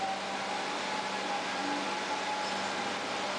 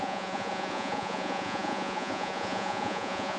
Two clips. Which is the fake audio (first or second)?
second